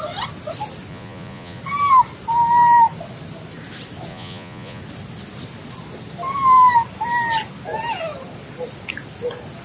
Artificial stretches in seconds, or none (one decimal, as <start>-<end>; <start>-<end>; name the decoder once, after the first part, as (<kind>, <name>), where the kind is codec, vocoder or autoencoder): 0.9-1.6 (vocoder, Vocos); 4.1-4.8

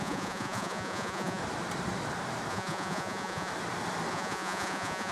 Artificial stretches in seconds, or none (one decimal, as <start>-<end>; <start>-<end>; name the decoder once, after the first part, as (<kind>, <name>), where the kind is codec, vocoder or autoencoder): 0.0-1.4 (vocoder, Vocos); 2.5-3.5; 4.1-5.1